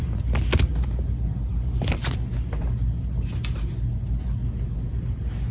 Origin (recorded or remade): recorded